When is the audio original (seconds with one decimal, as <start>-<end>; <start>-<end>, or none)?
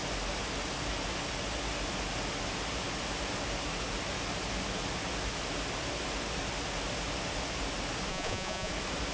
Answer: 0.0-8.1; 8.7-9.1